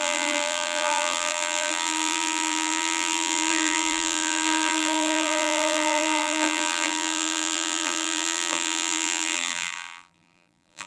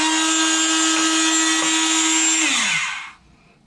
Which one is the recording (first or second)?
second